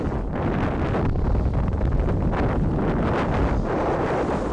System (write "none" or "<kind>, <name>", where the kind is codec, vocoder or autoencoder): none